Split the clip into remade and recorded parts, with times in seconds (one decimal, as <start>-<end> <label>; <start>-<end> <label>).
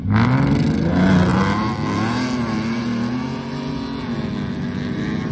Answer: 0.0-5.3 recorded